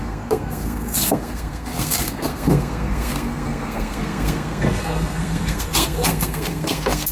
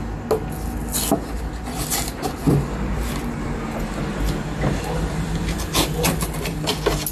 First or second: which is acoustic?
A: second